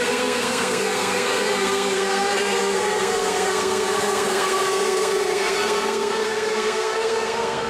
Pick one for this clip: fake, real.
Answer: fake